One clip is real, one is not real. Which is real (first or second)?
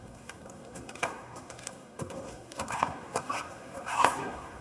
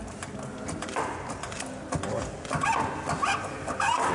second